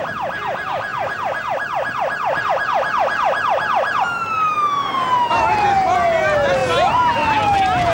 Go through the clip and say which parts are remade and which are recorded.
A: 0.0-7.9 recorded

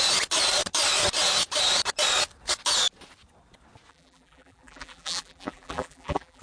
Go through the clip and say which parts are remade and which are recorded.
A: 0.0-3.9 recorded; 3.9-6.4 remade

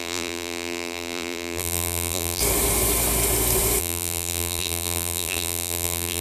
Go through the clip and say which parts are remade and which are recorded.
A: 0.0-2.4 remade; 2.4-3.8 recorded; 3.8-6.2 remade

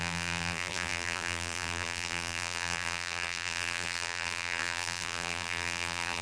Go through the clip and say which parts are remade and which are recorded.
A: 0.0-6.2 remade

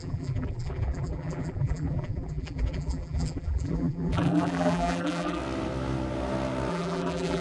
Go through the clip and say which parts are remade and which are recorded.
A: 0.0-5.4 remade; 5.4-6.7 recorded; 6.7-7.4 remade

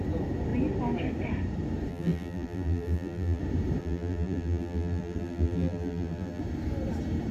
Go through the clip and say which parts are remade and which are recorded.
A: 0.0-1.9 recorded; 1.9-3.4 remade; 3.4-3.8 recorded; 3.8-6.4 remade; 6.4-7.3 recorded